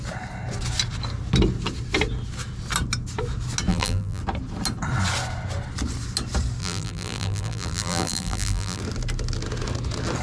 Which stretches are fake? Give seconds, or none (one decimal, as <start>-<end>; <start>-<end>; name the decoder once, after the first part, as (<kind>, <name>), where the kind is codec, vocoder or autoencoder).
3.7-4.2 (vocoder, BigVGAN v2); 6.6-8.8